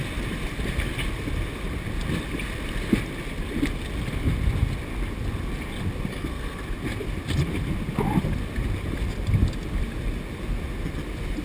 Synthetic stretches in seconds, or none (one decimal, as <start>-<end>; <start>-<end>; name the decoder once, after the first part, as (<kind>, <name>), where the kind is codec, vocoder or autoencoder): 6.1-6.6 (codec, SNAC)